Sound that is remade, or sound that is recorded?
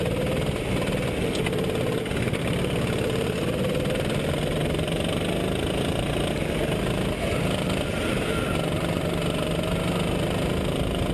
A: recorded